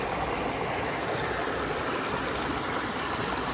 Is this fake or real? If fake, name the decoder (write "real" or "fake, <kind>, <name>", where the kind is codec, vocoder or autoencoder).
real